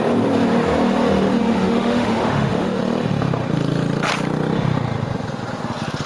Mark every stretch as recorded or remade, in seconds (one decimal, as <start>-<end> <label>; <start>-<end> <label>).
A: 0.0-1.4 recorded; 1.4-2.8 remade; 2.8-6.1 recorded